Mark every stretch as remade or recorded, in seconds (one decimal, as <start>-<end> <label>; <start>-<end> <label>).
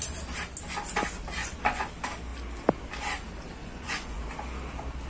0.0-1.4 recorded; 1.4-1.9 remade; 1.9-3.6 recorded; 3.6-4.2 remade; 4.2-5.1 recorded